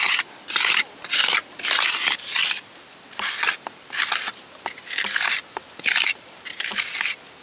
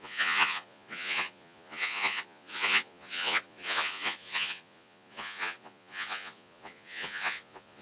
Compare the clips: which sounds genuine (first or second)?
first